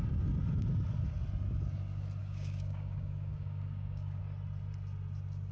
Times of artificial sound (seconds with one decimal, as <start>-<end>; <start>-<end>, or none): 2.2-4.2